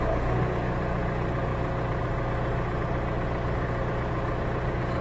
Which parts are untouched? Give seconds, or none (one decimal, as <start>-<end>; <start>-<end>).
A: 0.0-5.0